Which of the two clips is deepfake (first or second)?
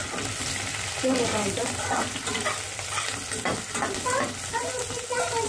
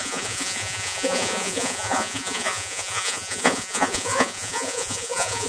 second